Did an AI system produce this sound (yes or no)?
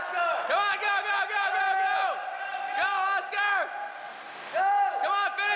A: no